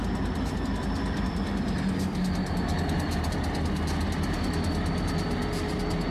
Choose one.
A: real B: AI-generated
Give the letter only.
A